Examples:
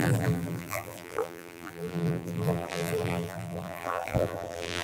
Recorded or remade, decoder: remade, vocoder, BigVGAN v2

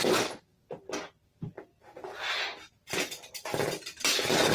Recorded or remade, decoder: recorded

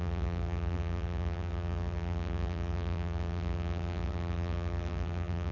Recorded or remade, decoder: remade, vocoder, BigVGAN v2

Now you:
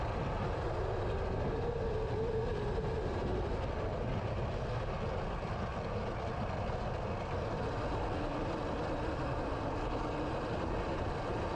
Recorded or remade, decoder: recorded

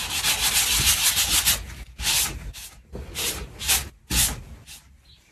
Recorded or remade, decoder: recorded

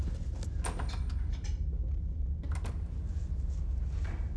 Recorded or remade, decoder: recorded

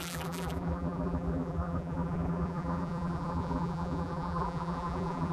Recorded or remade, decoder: remade, vocoder, BigVGAN v2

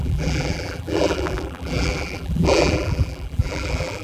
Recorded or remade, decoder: remade, vocoder, BigVGAN v2